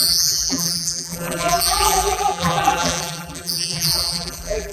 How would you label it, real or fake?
fake